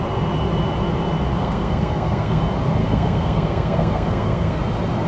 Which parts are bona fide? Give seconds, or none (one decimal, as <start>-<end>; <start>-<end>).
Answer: 0.0-1.4; 2.4-2.8; 4.6-5.1